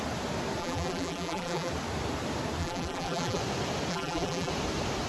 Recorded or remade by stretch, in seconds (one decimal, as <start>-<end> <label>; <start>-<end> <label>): 0.0-0.6 recorded; 0.6-1.7 remade; 1.7-2.6 recorded; 2.6-3.4 remade; 3.4-3.9 recorded; 3.9-4.5 remade; 4.5-5.1 recorded